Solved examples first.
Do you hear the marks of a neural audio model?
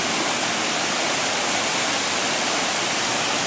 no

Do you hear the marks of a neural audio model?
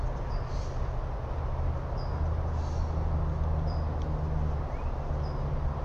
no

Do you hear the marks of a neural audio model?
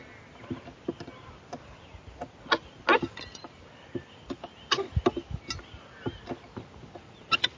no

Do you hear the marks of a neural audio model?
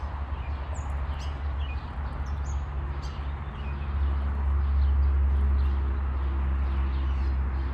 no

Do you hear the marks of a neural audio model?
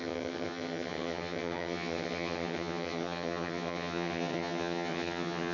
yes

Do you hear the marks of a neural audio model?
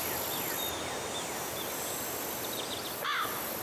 no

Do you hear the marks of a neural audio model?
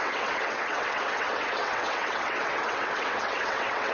yes